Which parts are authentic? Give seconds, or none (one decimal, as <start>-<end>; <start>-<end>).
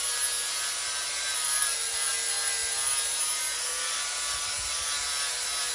0.0-1.6; 2.1-5.7